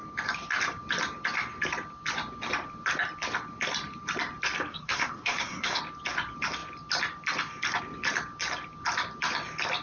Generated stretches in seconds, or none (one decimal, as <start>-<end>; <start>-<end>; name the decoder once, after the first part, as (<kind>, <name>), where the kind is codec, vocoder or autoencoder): 4.7-5.8 (codec, SNAC)